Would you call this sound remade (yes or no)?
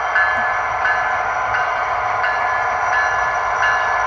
no